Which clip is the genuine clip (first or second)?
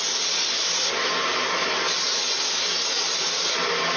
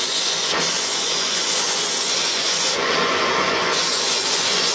first